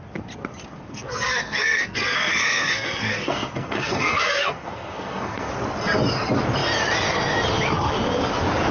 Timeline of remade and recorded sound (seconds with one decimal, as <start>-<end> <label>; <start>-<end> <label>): 0.0-0.7 recorded; 0.7-5.5 remade; 5.5-8.7 recorded